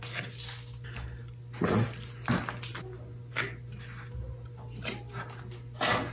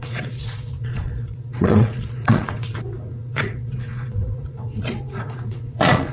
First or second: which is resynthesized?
second